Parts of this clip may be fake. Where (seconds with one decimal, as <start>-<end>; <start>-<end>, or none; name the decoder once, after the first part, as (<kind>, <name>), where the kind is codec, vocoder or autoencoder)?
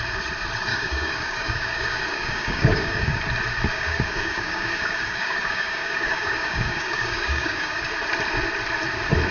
0.7-3.2 (codec, DAC); 3.7-7.8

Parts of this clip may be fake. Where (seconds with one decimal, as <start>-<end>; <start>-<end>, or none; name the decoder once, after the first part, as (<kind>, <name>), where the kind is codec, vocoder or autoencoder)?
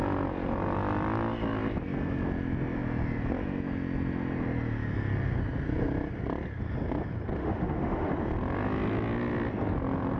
7.4-8.1 (autoencoder, DAC-VAE)